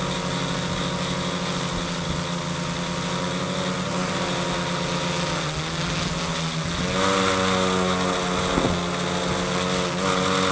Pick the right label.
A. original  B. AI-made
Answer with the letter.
A